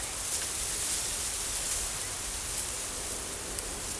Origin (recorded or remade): recorded